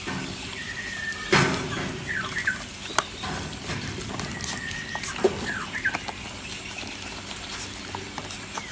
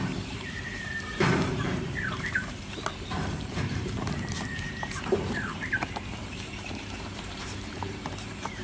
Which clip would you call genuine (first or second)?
first